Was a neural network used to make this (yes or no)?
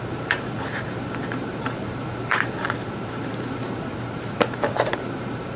yes